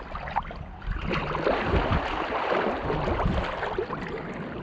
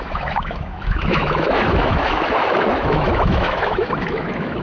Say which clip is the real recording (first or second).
first